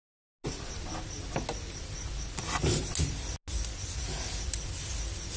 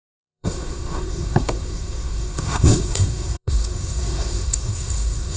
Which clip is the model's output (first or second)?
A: second